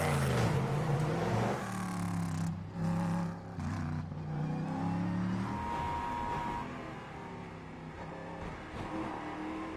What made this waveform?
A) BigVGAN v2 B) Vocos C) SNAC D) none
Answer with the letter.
D